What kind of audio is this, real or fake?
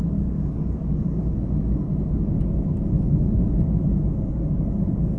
fake